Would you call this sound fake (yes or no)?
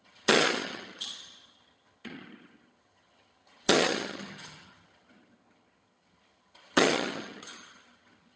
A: yes